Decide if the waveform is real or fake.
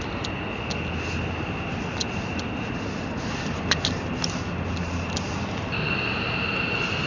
real